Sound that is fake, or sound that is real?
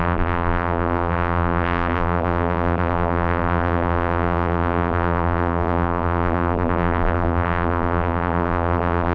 fake